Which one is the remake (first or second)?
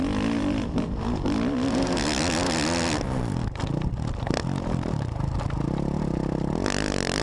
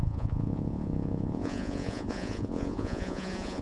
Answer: second